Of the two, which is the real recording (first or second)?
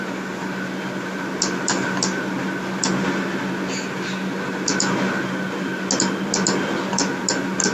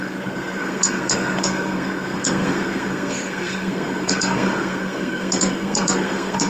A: first